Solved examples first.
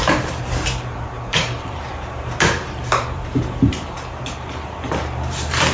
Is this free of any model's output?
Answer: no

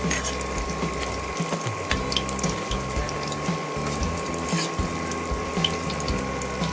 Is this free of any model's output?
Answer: yes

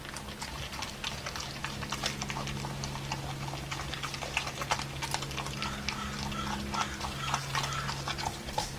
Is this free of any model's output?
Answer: yes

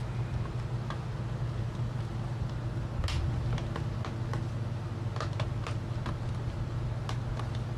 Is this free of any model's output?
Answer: yes